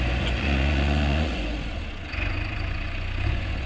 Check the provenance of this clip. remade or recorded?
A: remade